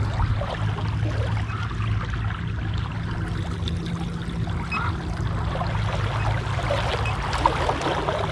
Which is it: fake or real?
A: real